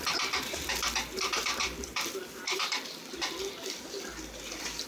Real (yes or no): no